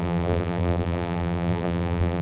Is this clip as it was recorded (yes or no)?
no